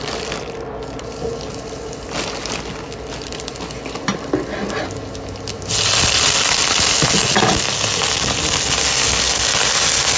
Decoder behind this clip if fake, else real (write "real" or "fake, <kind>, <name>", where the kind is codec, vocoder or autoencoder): real